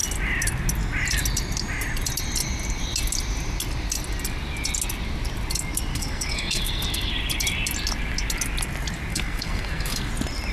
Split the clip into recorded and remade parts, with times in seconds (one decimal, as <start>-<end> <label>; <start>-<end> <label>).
0.0-5.9 recorded; 5.9-7.1 remade; 7.1-9.1 recorded; 9.1-10.1 remade; 10.1-10.5 recorded